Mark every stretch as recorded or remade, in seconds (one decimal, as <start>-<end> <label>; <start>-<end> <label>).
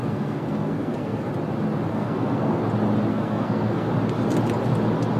0.0-1.3 remade; 1.3-1.9 recorded; 1.9-2.6 remade; 2.6-3.1 recorded; 3.1-3.9 remade; 3.9-5.2 recorded